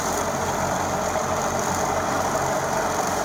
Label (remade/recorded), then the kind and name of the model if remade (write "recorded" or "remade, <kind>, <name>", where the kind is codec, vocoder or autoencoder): recorded